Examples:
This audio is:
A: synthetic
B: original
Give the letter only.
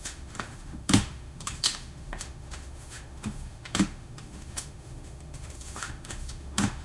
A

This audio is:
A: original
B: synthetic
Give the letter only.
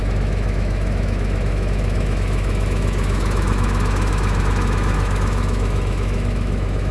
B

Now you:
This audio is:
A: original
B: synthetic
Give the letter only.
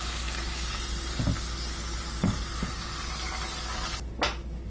A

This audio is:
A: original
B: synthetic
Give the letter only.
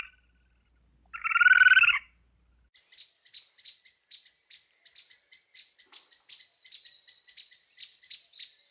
A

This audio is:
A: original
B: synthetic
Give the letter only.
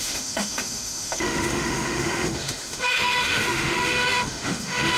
B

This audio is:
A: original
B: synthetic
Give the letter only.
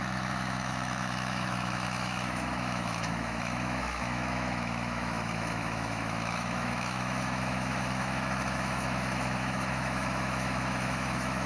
B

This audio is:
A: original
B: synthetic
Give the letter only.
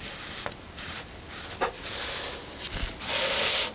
A